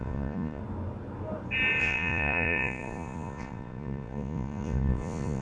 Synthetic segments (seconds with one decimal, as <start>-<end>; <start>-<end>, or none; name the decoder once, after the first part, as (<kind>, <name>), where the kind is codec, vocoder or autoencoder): 0.0-0.6 (vocoder, Vocos); 1.8-5.4